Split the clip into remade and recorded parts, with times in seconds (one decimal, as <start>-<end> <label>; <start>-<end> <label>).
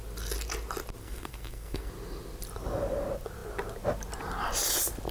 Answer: 0.0-1.0 recorded; 1.0-1.9 remade; 1.9-5.1 recorded